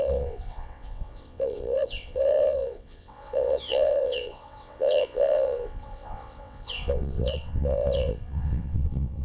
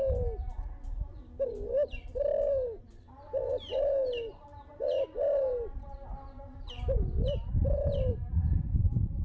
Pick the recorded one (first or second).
second